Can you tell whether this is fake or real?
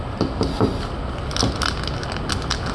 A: real